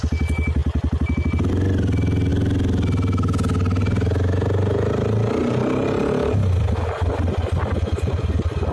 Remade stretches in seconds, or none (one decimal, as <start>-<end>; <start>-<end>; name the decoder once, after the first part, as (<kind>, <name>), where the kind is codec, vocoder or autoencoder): none

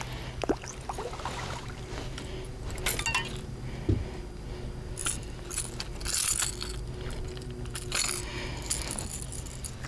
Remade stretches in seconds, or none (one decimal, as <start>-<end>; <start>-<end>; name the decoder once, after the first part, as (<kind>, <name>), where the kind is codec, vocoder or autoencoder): 5.0-5.7 (vocoder, BigVGAN v2)

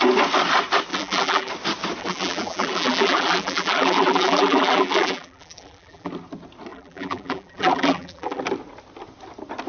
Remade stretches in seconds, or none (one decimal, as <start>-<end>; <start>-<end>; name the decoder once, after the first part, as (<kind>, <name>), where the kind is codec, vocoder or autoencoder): 0.9-1.5 (vocoder, BigVGAN v2); 2.0-6.1; 6.7-8.4

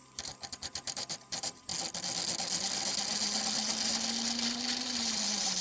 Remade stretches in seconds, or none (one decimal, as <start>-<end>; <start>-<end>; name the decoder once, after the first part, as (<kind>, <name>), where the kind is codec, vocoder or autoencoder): 0.0-1.7 (vocoder, BigVGAN v2); 4.8-5.6